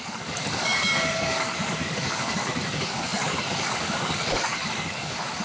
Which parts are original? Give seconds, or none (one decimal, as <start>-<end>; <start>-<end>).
none

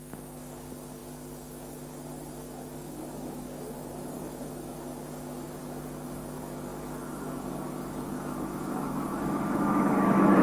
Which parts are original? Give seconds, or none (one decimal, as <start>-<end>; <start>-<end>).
none

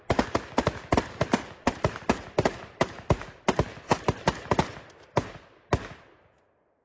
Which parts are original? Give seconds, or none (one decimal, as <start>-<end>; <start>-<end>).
0.0-6.8